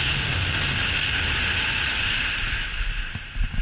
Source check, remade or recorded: recorded